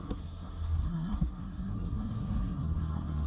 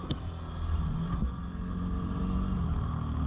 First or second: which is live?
second